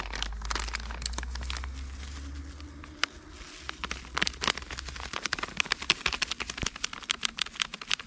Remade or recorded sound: recorded